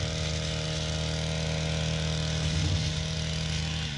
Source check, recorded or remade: recorded